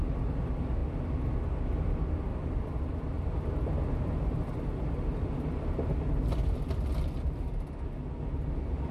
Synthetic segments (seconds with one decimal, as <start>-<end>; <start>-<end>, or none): 2.3-4.4